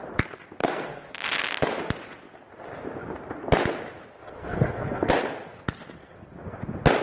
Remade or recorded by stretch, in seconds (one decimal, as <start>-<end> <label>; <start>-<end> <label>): 0.0-0.6 recorded; 0.6-1.1 remade; 1.1-4.2 recorded; 4.2-5.1 remade; 5.1-6.0 recorded; 6.0-6.6 remade; 6.6-7.0 recorded